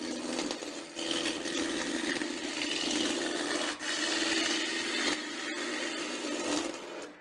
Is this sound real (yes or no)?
yes